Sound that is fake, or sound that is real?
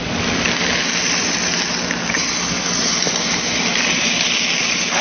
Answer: real